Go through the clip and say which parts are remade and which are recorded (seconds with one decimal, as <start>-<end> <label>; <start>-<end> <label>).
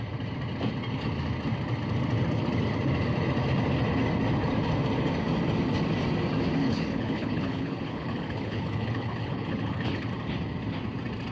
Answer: 0.0-6.6 recorded; 6.6-10.1 remade; 10.1-11.3 recorded